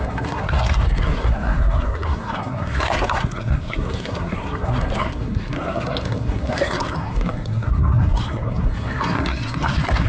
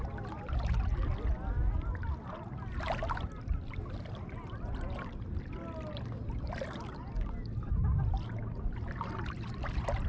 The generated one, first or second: first